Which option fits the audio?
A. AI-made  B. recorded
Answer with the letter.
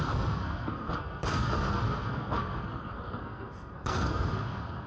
A